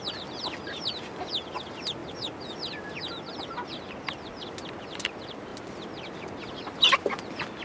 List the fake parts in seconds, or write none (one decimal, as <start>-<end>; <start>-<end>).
none